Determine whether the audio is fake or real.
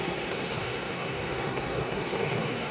fake